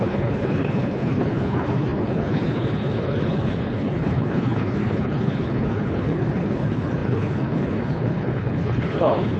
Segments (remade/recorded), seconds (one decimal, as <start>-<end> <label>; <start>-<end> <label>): 0.0-9.4 remade